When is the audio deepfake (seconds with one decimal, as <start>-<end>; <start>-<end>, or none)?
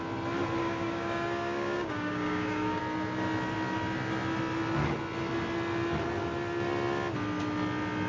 0.6-2.8